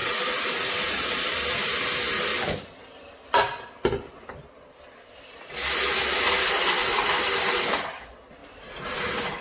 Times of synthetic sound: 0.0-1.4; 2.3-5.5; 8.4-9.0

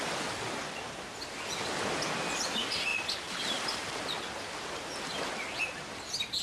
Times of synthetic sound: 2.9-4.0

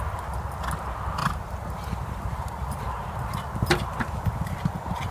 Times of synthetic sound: 1.2-2.8

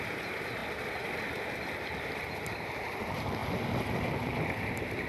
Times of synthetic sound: 0.0-0.6; 2.0-3.4

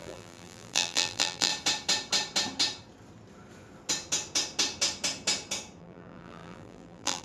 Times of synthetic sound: 0.0-1.5; 5.8-7.2